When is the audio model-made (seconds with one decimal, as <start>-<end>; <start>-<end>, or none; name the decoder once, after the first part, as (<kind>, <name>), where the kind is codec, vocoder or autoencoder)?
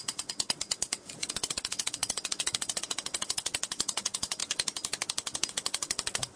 0.0-4.4 (vocoder, WaveNeXt); 5.5-6.4